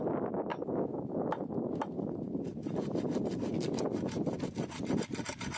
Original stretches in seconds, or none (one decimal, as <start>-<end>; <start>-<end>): 0.0-0.5; 1.3-5.6